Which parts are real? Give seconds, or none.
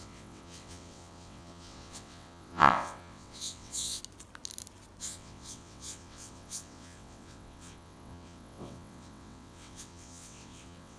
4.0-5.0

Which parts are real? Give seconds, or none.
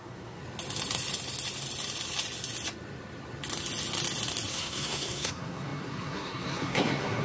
0.4-4.5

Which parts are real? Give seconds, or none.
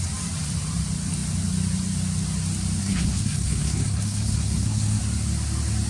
0.0-2.8; 5.0-5.9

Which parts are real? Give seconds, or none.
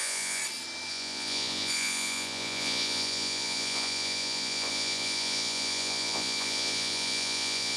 0.4-0.9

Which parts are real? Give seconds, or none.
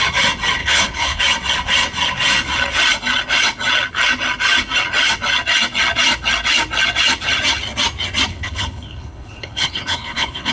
0.0-0.6; 1.2-8.3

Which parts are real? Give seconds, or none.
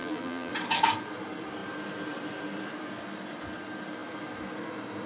0.5-5.1